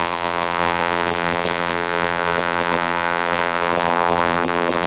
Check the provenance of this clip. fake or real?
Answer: fake